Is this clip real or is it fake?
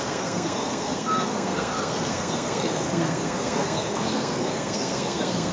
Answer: fake